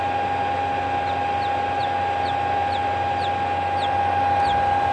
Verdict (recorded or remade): recorded